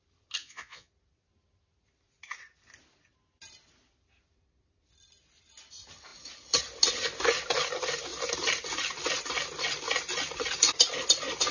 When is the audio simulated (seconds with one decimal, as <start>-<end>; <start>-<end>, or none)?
0.4-0.9